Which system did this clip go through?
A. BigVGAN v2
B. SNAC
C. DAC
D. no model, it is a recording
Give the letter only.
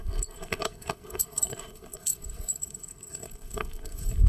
B